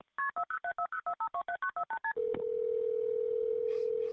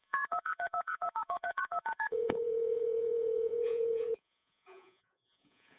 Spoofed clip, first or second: second